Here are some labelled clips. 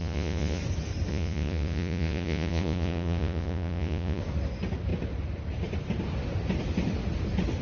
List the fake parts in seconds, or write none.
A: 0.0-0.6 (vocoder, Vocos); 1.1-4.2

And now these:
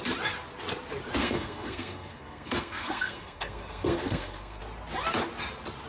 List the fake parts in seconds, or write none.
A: 1.2-4.6 (codec, SNAC)

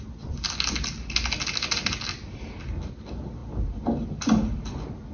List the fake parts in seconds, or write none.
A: none

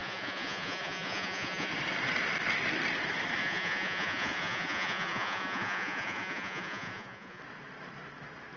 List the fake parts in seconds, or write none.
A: 0.0-1.7 (vocoder, Vocos); 3.4-7.4

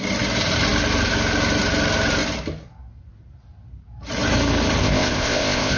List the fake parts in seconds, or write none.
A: 4.8-5.8 (codec, ZipCodec)

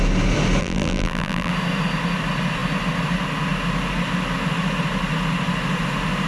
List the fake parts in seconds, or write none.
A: 0.6-1.5 (vocoder, BigVGAN v2)

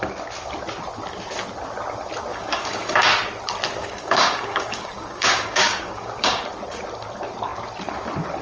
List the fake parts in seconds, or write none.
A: 2.3-3.1 (codec, DAC); 3.8-6.4

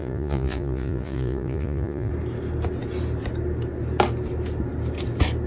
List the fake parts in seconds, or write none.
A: 0.0-2.1 (vocoder, Vocos)